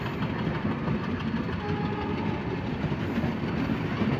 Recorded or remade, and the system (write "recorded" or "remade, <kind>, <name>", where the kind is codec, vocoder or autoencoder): recorded